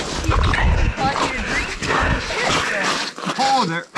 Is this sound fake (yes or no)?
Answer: no